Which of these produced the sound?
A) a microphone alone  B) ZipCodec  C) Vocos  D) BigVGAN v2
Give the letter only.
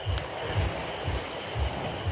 D